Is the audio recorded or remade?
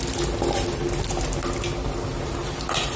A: recorded